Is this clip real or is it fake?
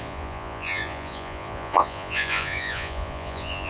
fake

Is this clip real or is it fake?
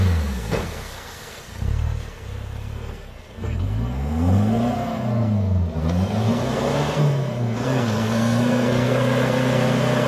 fake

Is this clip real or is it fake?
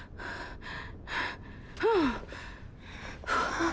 real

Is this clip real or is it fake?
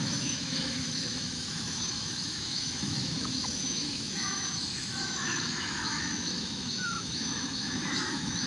fake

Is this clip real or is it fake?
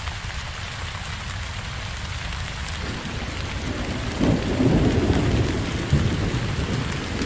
real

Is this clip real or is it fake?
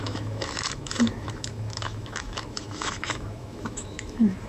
fake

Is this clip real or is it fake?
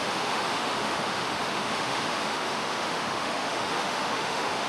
fake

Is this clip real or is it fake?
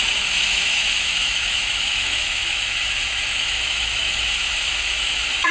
fake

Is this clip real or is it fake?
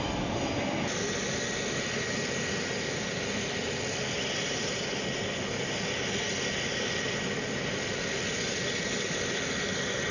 real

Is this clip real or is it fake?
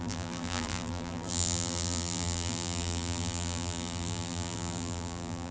fake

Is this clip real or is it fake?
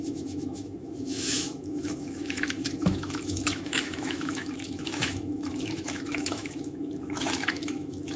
fake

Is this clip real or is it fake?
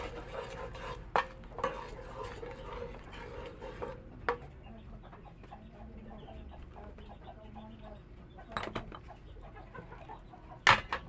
real